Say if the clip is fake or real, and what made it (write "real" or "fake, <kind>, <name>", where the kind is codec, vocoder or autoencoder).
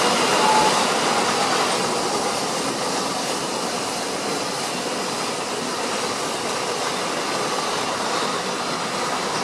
real